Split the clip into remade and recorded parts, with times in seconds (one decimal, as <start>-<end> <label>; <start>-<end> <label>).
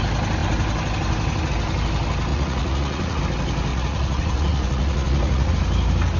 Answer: 0.0-2.3 recorded; 2.3-3.2 remade; 3.2-3.7 recorded; 3.7-5.5 remade; 5.5-6.2 recorded